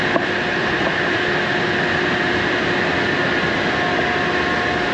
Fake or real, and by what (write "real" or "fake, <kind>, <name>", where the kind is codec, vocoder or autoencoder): real